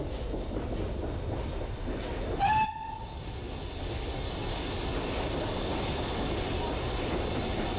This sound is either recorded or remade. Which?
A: recorded